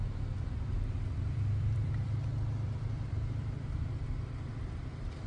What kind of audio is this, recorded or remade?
remade